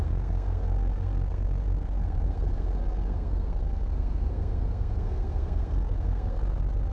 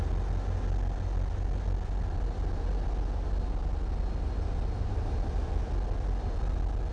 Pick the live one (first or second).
second